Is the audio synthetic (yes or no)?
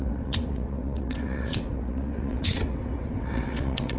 yes